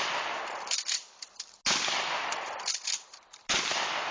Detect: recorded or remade recorded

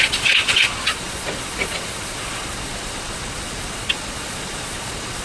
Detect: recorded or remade remade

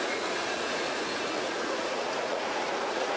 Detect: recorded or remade remade